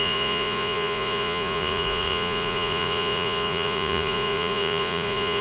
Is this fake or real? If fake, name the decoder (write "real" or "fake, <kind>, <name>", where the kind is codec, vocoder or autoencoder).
fake, vocoder, Vocos